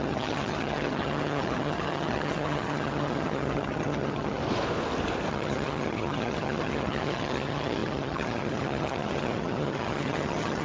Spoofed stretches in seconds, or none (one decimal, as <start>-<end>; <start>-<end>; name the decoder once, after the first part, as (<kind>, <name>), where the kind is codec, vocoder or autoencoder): 0.0-4.4 (vocoder, HiFi-GAN); 5.3-10.6

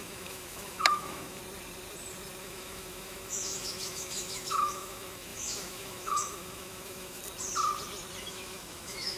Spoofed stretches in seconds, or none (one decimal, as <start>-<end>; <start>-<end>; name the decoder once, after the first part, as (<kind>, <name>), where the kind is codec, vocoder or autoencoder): 0.0-1.4 (autoencoder, DAC-VAE); 2.4-7.2; 8.2-9.2